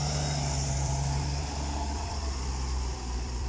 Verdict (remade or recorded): remade